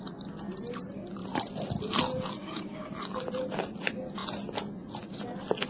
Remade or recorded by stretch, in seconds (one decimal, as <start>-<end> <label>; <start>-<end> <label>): 0.0-2.4 recorded; 2.4-2.9 remade; 2.9-5.7 recorded